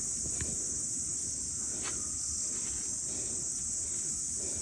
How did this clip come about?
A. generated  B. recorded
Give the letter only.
B